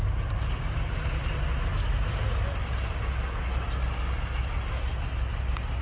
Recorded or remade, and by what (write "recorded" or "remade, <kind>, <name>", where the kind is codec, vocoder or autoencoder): recorded